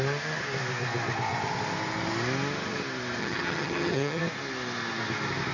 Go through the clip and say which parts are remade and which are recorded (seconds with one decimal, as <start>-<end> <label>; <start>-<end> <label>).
0.0-3.2 recorded; 3.2-4.2 remade; 4.2-5.5 recorded